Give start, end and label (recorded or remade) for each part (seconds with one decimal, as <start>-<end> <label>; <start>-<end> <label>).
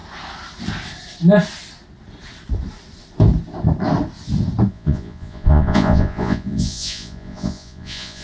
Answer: 0.0-4.7 recorded; 4.7-8.2 remade